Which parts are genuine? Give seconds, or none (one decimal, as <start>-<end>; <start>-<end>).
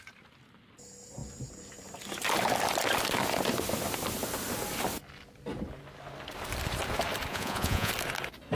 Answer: 0.0-7.3; 7.9-8.6